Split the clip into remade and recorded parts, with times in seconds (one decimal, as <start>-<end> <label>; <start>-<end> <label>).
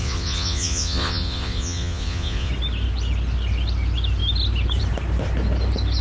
0.0-2.5 remade; 2.5-6.0 recorded